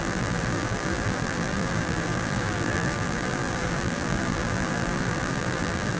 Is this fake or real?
fake